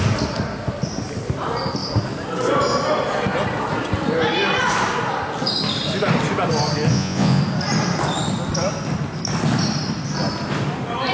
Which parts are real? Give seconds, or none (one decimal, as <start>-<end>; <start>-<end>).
0.0-6.9; 7.4-11.1